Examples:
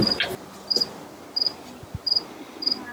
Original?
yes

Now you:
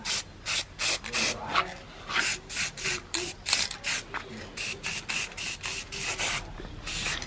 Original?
yes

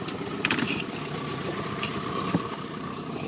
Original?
no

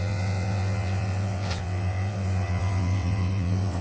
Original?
no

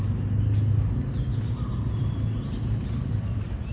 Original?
yes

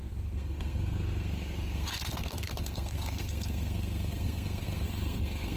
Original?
no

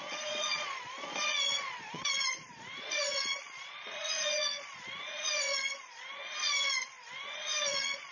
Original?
no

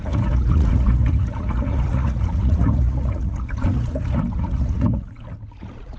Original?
no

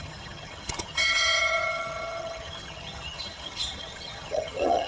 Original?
no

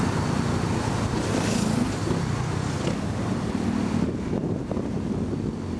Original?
yes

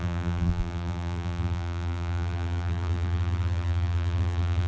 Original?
no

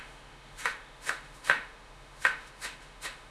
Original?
no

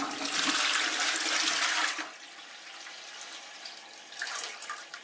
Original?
yes